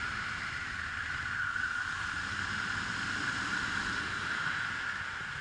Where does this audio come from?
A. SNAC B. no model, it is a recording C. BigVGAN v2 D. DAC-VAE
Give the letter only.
B